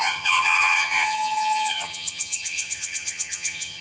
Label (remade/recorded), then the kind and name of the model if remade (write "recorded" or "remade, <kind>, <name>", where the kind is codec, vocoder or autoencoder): remade, vocoder, HiFi-GAN